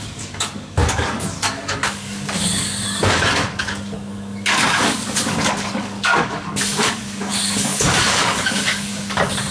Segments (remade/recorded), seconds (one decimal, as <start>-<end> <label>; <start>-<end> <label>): 0.0-9.5 remade

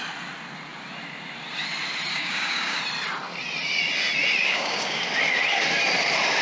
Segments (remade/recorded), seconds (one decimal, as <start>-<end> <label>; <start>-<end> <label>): 0.0-2.1 recorded; 2.1-2.8 remade; 2.8-4.4 recorded; 4.4-5.0 remade; 5.0-6.4 recorded

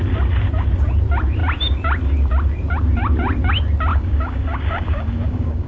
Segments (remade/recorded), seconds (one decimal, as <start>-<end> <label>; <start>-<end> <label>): 0.0-3.9 recorded; 3.9-5.7 remade

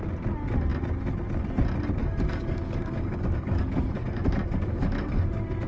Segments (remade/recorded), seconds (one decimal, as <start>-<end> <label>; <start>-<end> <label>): 0.0-2.0 recorded; 2.0-5.3 remade; 5.3-5.7 recorded

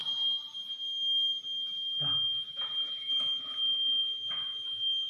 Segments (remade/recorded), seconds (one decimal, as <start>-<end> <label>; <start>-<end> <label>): 0.0-5.1 recorded